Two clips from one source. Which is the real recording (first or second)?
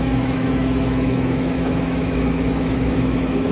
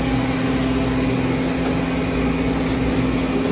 second